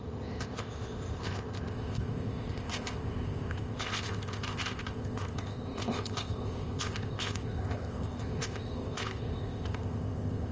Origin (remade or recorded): remade